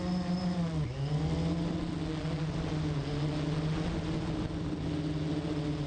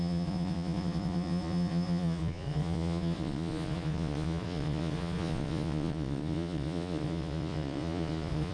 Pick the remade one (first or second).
second